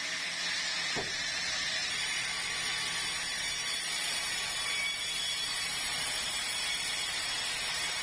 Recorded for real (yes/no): yes